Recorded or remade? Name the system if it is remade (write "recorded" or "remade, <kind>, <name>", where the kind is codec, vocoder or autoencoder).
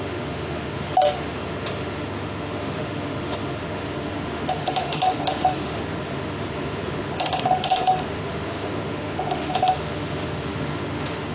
remade, autoencoder, DAC-VAE